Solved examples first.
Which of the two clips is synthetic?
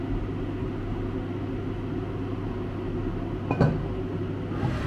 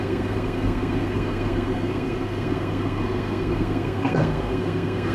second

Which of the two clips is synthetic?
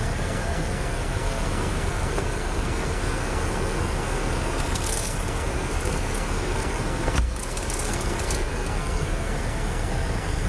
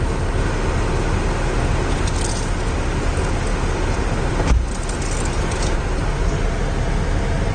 first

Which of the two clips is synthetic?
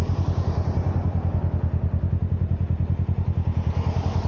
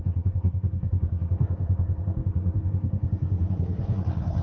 second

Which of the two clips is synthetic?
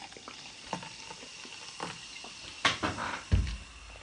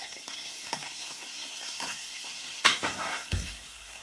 second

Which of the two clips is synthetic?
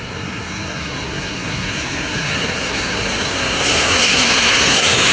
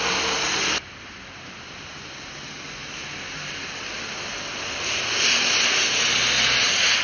first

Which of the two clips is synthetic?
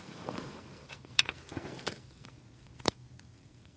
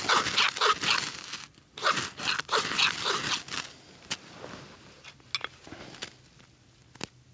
first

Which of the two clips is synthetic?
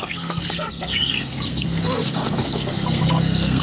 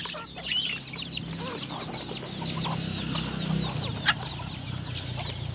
first